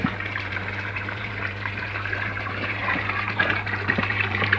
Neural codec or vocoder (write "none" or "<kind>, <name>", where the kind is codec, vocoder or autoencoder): vocoder, BigVGAN v2